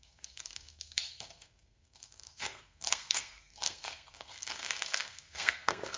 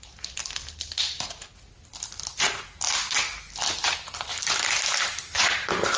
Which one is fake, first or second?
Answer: first